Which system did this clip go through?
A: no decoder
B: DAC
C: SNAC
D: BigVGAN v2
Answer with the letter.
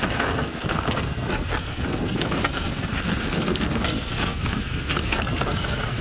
C